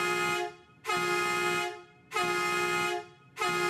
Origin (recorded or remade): recorded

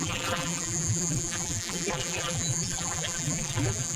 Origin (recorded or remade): remade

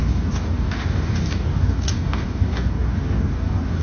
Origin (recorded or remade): remade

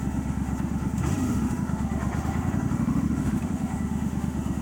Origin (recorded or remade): remade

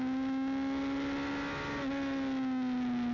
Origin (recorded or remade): recorded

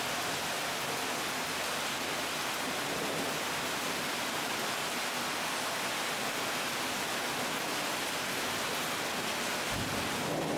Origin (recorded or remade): recorded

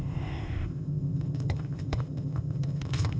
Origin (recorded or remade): remade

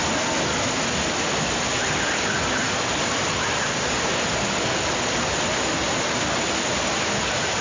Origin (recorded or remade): recorded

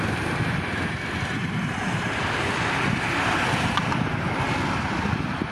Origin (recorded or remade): recorded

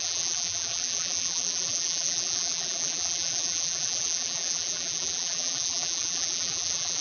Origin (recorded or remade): remade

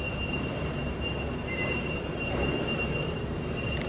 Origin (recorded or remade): remade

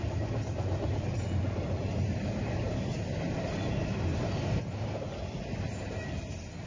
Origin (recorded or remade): recorded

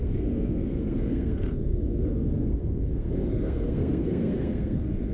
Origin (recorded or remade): remade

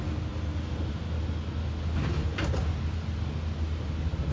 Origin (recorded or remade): recorded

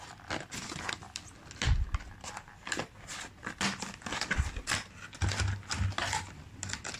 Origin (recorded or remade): recorded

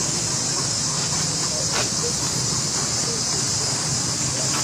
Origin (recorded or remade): recorded